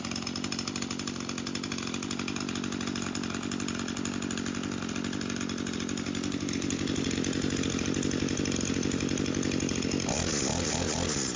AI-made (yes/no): no